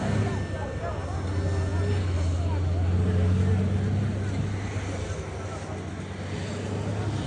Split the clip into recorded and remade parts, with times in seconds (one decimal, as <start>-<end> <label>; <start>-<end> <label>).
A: 0.0-7.3 recorded